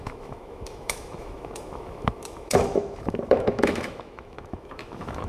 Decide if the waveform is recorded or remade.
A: remade